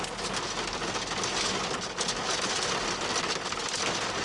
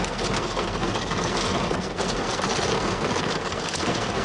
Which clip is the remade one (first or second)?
second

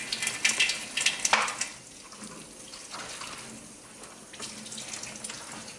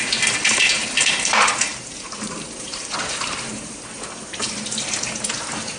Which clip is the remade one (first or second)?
second